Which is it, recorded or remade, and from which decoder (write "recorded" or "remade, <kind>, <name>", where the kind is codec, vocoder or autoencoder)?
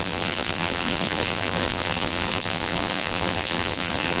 remade, vocoder, BigVGAN v2